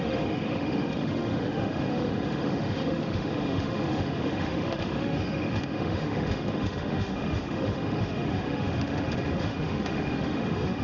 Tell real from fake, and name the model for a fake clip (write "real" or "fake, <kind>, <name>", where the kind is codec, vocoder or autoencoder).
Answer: fake, autoencoder, DAC-VAE